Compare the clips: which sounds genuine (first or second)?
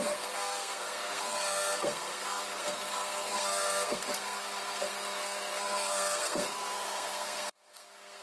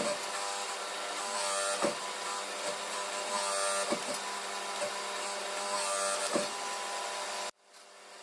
second